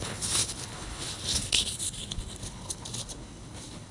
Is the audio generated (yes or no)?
yes